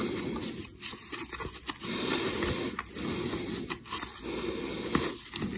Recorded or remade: recorded